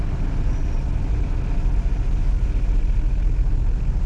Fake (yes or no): no